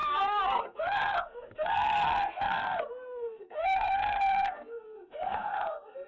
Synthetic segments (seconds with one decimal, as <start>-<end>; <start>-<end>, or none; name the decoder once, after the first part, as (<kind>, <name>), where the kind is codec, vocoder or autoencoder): 0.0-6.1 (codec, SNAC)